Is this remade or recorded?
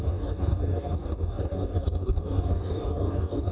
remade